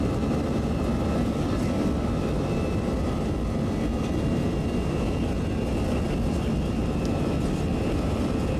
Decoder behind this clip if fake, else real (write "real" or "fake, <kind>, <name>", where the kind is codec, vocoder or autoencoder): real